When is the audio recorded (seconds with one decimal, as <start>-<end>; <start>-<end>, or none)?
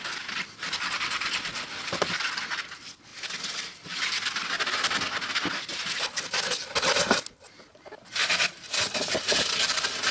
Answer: 0.0-10.1